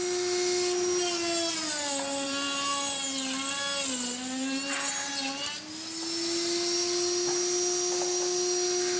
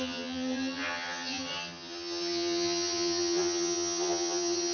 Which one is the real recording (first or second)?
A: first